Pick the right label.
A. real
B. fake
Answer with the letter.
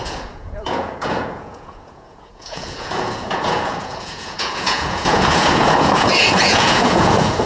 B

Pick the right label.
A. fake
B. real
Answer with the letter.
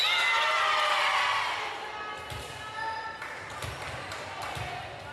B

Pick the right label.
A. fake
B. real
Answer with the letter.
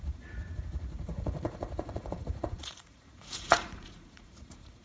A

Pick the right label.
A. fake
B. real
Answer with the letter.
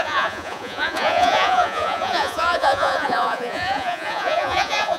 A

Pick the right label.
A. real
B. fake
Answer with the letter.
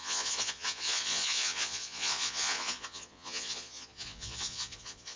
B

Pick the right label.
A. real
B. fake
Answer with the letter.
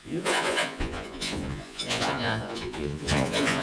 B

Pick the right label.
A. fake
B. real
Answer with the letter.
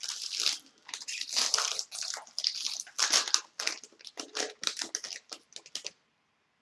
B